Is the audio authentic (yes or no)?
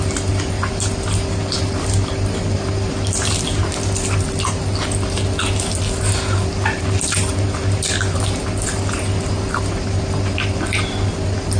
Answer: yes